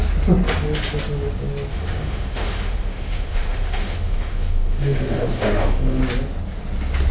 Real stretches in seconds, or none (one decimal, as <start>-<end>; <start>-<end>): 0.0-1.7; 6.0-7.1